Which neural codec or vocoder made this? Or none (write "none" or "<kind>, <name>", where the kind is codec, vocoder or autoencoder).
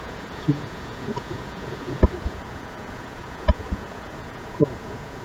vocoder, Vocos